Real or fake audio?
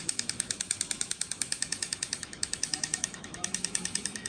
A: fake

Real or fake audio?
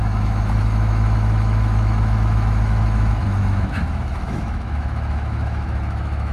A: fake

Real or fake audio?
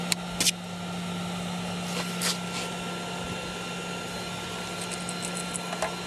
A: real